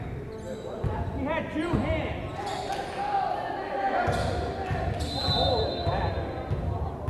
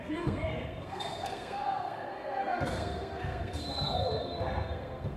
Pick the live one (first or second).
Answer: first